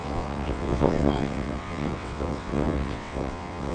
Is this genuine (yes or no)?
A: no